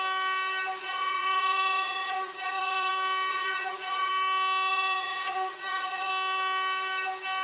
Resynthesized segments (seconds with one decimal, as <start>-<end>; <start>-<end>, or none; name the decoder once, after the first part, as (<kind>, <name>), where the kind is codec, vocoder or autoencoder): 0.8-2.9 (vocoder, Vocos); 3.3-4.1; 4.7-6.1